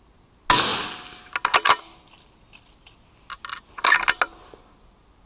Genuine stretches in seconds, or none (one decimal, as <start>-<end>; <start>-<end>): 0.0-5.3